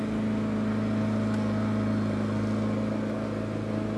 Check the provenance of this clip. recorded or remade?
recorded